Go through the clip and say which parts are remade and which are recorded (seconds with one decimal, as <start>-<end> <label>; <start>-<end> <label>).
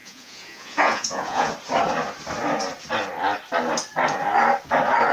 0.0-1.5 remade; 1.5-5.1 recorded